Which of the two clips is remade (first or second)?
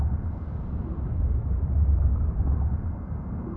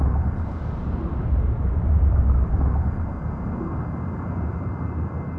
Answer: first